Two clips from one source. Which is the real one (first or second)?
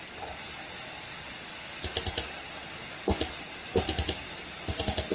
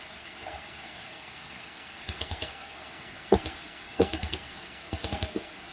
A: first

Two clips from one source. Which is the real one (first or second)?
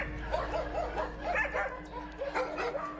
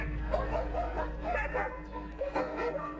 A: first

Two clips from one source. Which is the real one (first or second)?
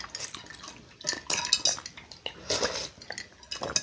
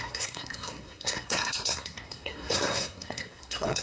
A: first